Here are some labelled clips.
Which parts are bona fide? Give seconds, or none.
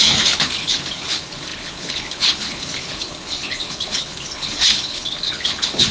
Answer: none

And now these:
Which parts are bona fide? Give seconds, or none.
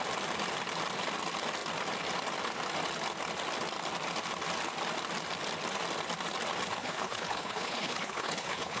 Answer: 0.0-6.8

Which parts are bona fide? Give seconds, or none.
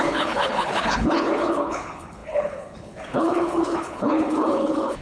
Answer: none